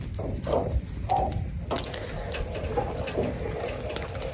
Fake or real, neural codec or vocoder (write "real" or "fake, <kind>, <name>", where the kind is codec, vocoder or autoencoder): real